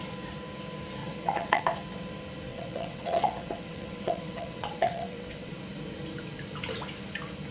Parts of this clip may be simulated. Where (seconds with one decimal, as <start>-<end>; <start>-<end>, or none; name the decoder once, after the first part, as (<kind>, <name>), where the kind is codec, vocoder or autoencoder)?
1.0-1.6 (vocoder, WaveNeXt); 2.5-5.6